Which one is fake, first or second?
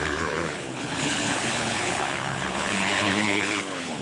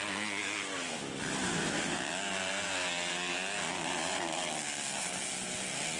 first